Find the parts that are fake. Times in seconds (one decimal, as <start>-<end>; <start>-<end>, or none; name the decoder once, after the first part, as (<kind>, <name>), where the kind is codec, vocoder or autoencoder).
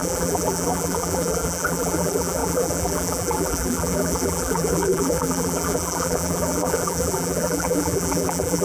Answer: 0.0-8.6 (vocoder, BigVGAN v2)